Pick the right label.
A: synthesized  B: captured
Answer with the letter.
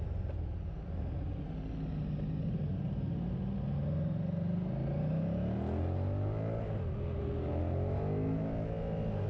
B